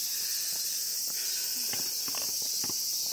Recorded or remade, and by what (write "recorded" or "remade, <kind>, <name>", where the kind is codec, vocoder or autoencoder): recorded